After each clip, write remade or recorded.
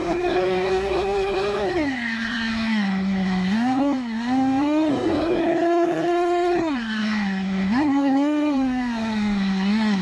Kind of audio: remade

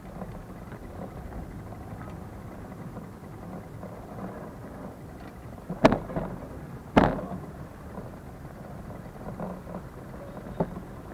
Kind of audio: recorded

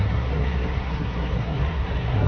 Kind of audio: remade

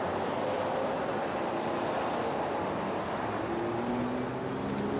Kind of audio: recorded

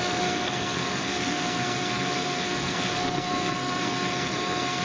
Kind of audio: remade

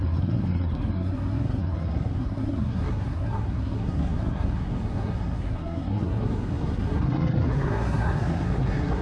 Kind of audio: remade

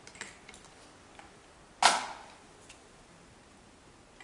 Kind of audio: recorded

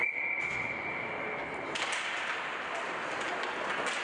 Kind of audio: recorded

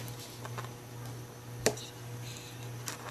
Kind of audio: recorded